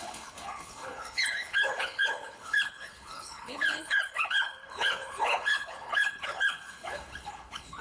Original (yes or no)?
no